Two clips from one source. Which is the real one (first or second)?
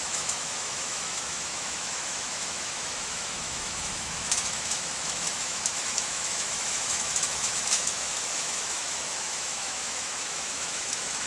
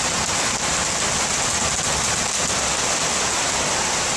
second